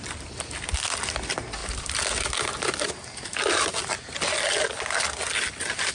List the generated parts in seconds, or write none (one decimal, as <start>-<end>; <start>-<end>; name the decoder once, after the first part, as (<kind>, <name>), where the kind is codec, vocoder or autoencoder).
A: none